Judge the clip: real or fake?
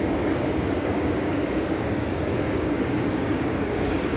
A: fake